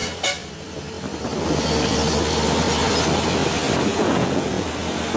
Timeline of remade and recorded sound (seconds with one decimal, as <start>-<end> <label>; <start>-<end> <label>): 0.0-3.9 recorded; 3.9-4.7 remade; 4.7-5.2 recorded